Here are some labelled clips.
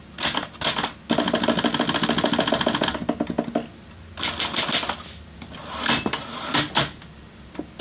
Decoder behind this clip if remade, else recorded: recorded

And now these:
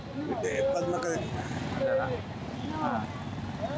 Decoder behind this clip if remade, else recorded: recorded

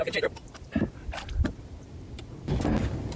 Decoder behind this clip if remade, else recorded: recorded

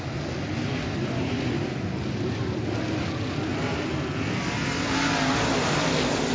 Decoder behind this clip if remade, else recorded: recorded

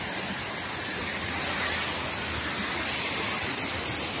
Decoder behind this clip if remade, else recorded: recorded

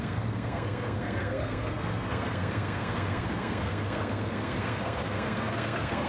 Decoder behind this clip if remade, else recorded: remade, codec, SNAC